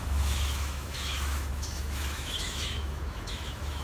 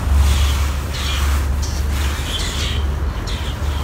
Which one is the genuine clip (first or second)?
second